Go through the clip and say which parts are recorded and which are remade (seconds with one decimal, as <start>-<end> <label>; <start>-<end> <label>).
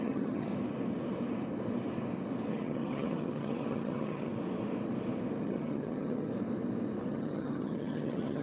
0.0-0.5 remade; 0.5-2.5 recorded; 2.5-4.3 remade; 4.3-5.4 recorded; 5.4-6.3 remade; 6.3-7.1 recorded; 7.1-8.4 remade